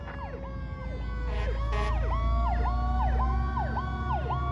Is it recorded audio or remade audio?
recorded